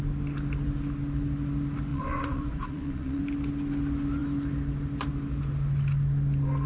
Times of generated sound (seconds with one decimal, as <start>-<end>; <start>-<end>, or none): 1.9-3.2